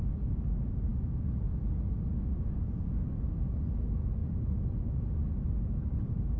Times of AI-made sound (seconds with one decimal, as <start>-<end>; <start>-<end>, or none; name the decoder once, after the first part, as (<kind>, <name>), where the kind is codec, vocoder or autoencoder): none